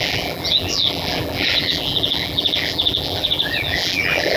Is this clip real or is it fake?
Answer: fake